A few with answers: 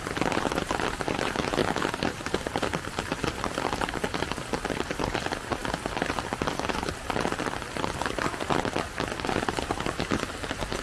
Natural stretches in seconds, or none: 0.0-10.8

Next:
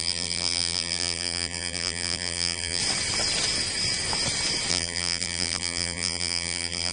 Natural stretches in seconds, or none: 2.8-4.7

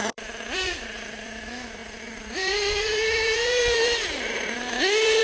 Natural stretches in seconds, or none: none

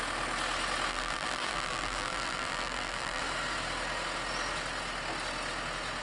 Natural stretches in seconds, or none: 0.0-0.9; 3.2-6.0